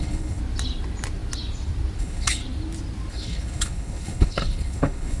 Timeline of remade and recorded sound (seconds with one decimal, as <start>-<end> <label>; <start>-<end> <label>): 0.0-0.4 remade; 0.4-2.0 recorded; 2.0-2.4 remade; 2.4-3.1 recorded; 3.1-5.2 remade

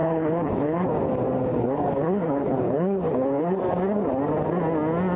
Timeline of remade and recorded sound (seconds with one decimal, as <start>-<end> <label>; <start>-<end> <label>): 0.0-0.9 remade; 0.9-1.4 recorded; 1.4-3.6 remade; 3.6-5.2 recorded

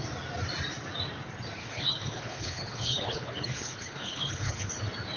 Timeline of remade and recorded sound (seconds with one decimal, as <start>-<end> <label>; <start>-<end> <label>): 0.0-1.6 recorded; 1.6-4.7 remade; 4.7-5.2 recorded